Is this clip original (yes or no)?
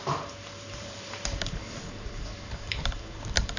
no